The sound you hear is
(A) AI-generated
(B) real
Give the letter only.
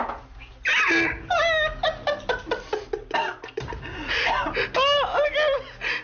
B